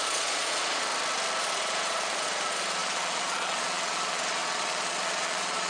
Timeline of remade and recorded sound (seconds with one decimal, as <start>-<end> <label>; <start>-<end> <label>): 0.0-0.9 remade; 0.9-1.4 recorded; 1.4-5.7 remade

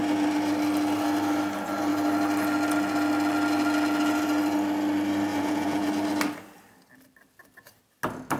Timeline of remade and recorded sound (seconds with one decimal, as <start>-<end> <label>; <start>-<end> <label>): 0.0-5.3 recorded; 5.3-5.9 remade; 5.9-8.4 recorded

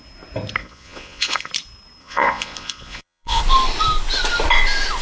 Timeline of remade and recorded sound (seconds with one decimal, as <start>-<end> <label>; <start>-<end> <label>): 0.0-0.6 recorded; 0.6-1.5 remade; 1.5-2.0 recorded; 2.0-3.4 remade; 3.4-5.0 recorded

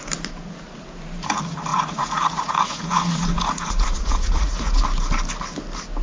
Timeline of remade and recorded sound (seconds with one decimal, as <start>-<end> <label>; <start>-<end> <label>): 0.0-1.7 recorded; 1.7-4.8 remade; 4.8-6.0 recorded

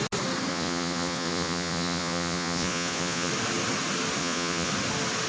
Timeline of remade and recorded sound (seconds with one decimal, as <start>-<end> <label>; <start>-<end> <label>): 0.0-0.5 recorded; 0.5-3.3 remade; 3.3-4.2 recorded; 4.2-4.7 remade; 4.7-5.3 recorded